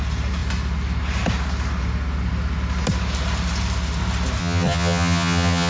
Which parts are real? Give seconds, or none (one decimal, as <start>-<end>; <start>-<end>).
0.0-4.4